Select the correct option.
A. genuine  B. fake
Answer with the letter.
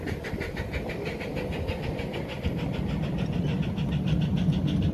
A